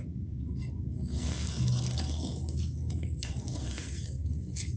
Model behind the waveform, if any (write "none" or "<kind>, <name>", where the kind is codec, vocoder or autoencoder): codec, SNAC